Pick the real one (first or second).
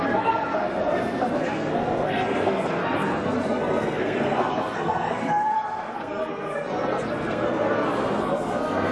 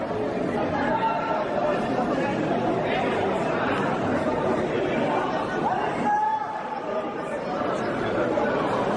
second